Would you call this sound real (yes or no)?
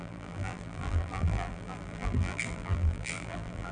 no